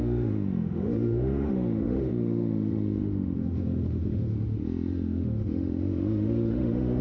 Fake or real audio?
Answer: fake